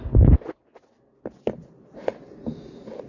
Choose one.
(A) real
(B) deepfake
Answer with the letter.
A